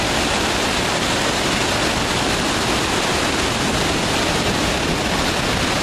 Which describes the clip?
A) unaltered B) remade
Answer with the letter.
A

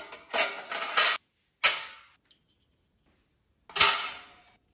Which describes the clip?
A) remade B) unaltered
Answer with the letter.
B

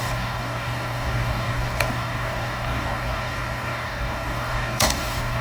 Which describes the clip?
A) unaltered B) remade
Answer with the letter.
B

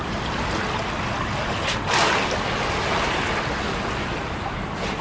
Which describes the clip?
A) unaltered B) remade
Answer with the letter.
A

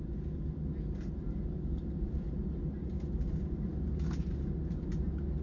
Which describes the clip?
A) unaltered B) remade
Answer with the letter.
A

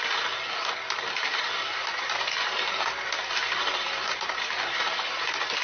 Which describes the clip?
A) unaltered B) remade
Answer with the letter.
A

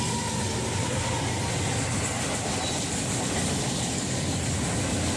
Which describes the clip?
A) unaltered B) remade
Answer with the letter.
A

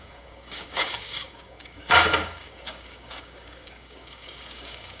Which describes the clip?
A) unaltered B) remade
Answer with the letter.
B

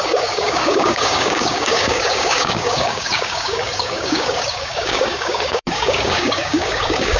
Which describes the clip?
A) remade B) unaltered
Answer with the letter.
A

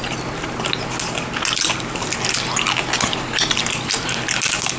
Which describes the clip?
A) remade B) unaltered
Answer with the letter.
B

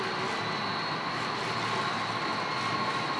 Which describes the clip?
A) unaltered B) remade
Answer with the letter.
A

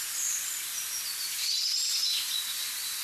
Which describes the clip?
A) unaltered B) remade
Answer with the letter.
A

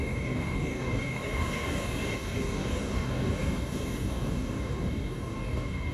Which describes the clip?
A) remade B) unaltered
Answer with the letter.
A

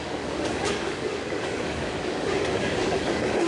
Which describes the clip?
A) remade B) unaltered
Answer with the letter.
A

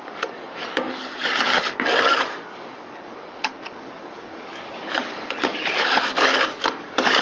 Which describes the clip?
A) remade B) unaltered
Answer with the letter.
A